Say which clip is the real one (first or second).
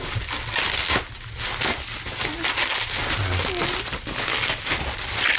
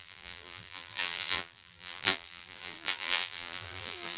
first